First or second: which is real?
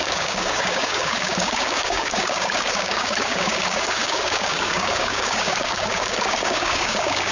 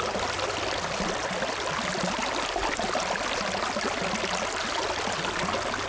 second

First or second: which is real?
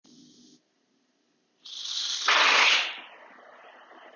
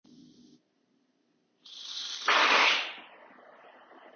first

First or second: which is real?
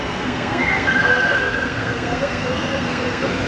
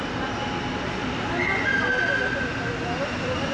second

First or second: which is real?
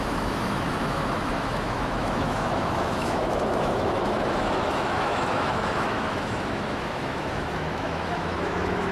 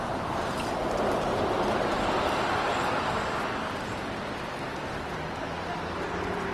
second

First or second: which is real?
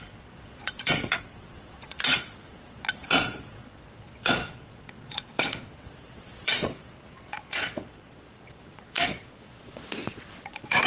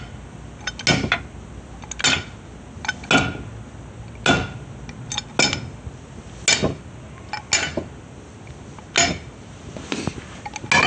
second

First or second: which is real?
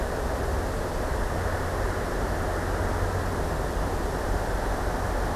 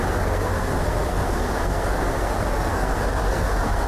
first